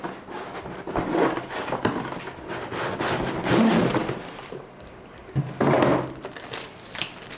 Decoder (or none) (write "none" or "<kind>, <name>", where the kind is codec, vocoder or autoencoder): none